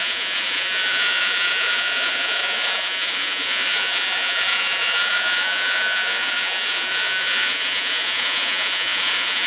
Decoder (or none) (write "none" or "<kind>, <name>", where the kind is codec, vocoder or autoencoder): vocoder, Vocos